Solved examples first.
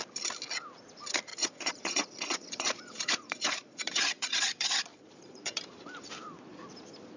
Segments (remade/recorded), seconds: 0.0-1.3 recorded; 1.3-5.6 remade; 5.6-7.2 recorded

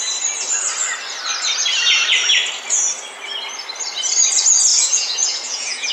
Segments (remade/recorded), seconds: 0.0-4.7 recorded; 4.7-5.9 remade

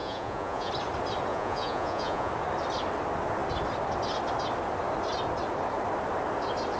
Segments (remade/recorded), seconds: 0.0-0.7 remade; 0.7-1.3 recorded; 1.3-2.3 remade; 2.3-6.8 recorded

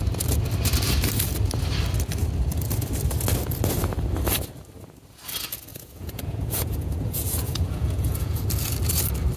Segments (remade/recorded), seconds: 0.0-5.7 recorded; 5.7-8.4 remade; 8.4-9.4 recorded